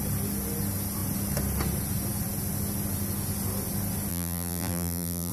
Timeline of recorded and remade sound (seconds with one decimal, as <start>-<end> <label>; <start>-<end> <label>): 0.0-4.1 recorded; 4.1-5.3 remade